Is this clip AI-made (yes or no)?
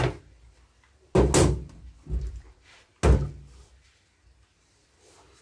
no